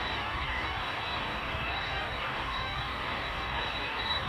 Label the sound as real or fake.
fake